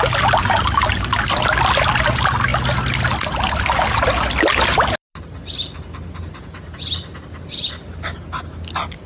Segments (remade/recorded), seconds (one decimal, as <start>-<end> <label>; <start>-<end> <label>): 0.0-9.1 recorded